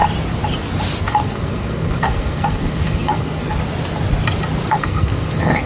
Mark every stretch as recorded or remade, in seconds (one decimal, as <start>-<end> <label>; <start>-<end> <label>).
0.0-1.0 recorded; 1.0-3.5 remade; 3.5-4.7 recorded; 4.7-5.7 remade